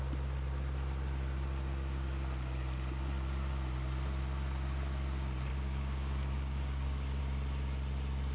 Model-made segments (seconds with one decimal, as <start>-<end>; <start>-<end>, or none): 5.5-7.2